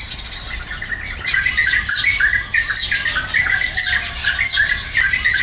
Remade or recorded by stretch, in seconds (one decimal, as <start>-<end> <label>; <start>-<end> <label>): 0.0-5.4 recorded